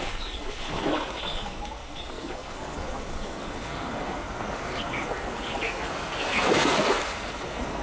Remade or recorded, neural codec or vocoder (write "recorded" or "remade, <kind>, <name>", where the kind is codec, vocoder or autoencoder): remade, codec, SNAC